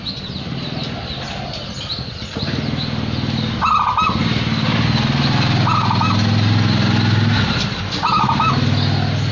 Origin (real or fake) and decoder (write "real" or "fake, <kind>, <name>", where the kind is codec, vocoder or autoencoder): real